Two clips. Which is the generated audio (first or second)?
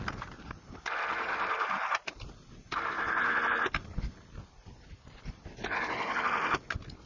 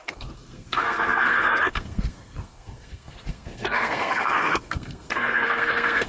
second